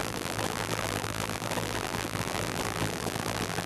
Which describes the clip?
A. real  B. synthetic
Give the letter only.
B